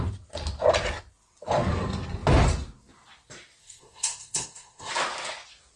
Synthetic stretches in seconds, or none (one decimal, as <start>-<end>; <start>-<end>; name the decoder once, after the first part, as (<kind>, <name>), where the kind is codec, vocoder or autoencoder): 3.6-4.9 (codec, SNAC)